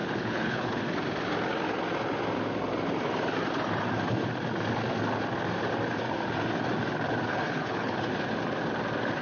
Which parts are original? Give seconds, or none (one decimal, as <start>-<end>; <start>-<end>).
0.8-7.3; 8.0-9.2